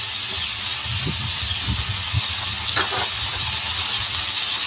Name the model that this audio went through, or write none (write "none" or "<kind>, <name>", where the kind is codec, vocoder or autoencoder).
none